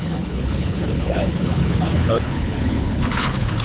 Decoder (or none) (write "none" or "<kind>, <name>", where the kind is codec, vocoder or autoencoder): codec, HILCodec